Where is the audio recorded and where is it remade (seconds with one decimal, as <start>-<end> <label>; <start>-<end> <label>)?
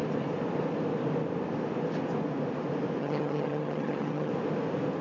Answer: 0.0-3.0 recorded; 3.0-4.3 remade; 4.3-5.0 recorded